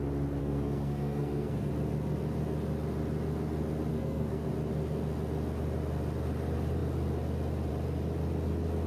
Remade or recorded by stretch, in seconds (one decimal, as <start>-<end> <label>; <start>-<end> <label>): 0.0-0.4 recorded; 0.4-1.7 remade; 1.7-3.9 recorded; 3.9-4.5 remade; 4.5-8.9 recorded

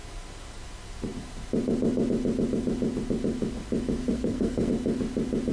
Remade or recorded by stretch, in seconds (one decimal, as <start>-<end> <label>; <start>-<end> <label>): 0.0-4.0 recorded; 4.0-4.7 remade; 4.7-5.5 recorded

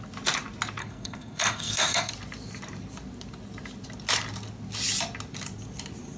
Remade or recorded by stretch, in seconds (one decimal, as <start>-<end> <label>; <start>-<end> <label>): 0.0-0.8 recorded; 0.8-2.1 remade; 2.1-6.2 recorded